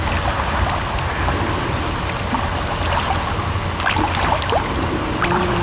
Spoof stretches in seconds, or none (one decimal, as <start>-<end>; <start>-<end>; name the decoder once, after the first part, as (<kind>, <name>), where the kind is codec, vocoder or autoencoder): none